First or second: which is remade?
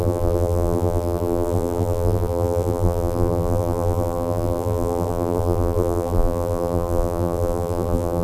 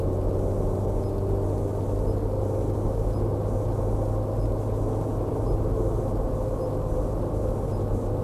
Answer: first